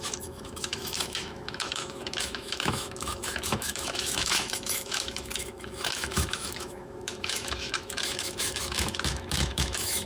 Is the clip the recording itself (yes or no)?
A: no